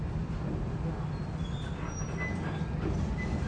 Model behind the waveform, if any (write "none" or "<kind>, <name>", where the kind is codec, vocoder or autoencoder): none